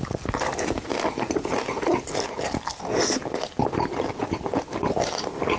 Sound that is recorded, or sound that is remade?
recorded